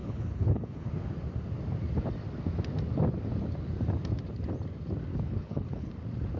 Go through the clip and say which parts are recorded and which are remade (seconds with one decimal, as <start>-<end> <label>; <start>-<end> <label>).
0.0-0.9 remade; 0.9-5.1 recorded; 5.1-5.9 remade; 5.9-6.4 recorded